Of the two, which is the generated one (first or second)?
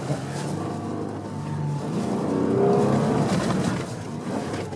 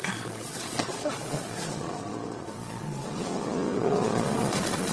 second